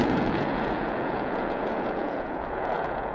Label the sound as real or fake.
fake